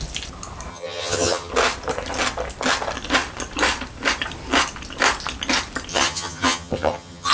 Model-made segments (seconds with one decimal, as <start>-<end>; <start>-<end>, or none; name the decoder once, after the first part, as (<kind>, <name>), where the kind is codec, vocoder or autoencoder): 0.7-1.5 (vocoder, HiFi-GAN); 5.9-7.3